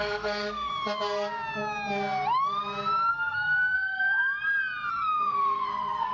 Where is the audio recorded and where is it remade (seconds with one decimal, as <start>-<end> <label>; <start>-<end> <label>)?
0.0-0.7 remade; 0.7-3.1 recorded; 3.1-4.2 remade; 4.2-4.9 recorded; 4.9-6.1 remade